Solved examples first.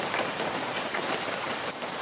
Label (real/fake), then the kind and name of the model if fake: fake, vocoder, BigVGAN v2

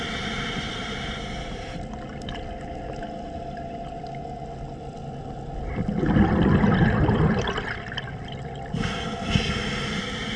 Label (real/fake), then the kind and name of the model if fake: real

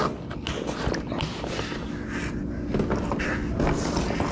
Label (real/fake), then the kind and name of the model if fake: real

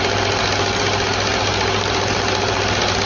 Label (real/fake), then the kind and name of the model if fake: real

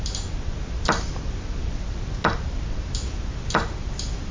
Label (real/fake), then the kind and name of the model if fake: real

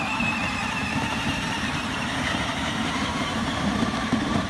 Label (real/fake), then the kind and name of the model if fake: fake, vocoder, BigVGAN v2